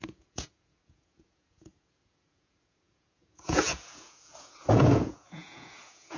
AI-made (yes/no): yes